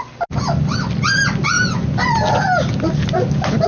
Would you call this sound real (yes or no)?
yes